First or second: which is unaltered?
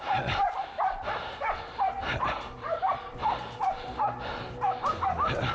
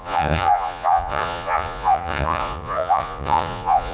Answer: first